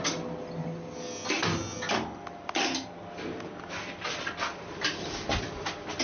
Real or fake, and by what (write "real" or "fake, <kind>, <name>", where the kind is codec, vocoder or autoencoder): real